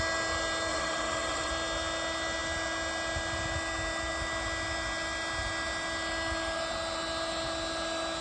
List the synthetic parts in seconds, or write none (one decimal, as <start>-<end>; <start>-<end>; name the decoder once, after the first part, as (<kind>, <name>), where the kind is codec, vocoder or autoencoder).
0.7-1.5 (vocoder, WaveNeXt)

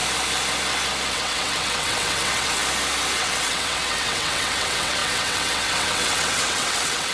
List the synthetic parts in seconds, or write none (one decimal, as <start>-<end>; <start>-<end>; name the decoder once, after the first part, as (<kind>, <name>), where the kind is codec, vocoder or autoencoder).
1.1-2.6 (vocoder, WaveNeXt); 3.2-7.1

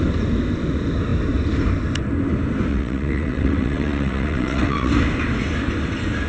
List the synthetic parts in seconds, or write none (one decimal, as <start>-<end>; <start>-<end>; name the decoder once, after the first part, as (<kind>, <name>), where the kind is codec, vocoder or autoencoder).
2.7-4.9 (vocoder, WaveNeXt)

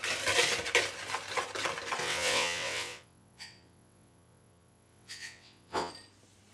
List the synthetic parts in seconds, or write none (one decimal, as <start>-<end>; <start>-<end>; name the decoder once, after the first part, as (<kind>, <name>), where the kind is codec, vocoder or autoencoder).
2.0-5.9 (vocoder, WaveNeXt)

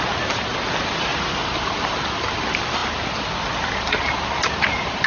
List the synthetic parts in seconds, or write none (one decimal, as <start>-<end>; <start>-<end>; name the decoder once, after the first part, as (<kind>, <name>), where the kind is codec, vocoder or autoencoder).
none

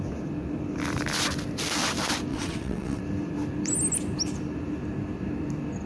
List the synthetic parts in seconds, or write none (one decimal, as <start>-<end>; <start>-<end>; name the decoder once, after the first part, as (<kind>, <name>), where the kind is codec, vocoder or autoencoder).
2.3-3.0 (vocoder, WaveNeXt)